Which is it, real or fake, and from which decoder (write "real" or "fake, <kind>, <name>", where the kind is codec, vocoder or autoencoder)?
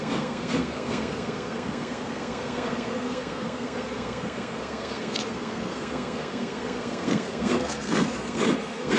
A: fake, codec, SNAC